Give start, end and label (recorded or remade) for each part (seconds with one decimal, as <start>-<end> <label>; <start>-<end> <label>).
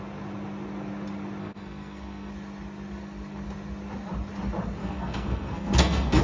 0.0-1.4 recorded; 1.4-2.3 remade; 2.3-4.8 recorded; 4.8-6.2 remade